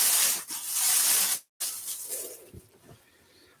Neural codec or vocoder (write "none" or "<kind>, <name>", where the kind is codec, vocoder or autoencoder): none